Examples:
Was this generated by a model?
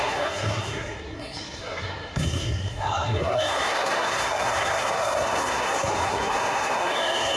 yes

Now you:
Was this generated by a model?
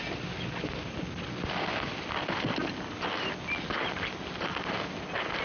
no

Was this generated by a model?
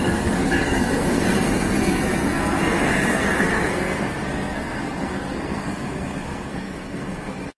yes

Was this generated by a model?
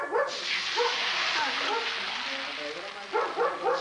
no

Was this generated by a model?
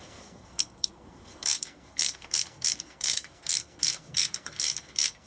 yes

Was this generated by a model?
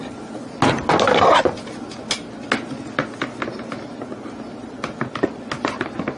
no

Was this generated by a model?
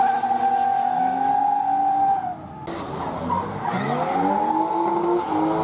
no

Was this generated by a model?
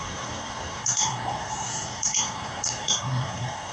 yes